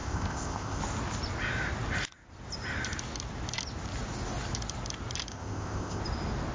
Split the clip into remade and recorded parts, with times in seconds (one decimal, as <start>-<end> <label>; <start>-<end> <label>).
0.0-0.8 remade; 0.8-5.3 recorded; 5.3-6.0 remade; 6.0-6.5 recorded